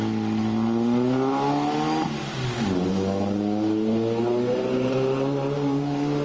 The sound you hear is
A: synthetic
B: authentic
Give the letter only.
B